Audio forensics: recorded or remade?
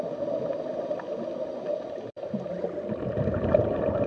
recorded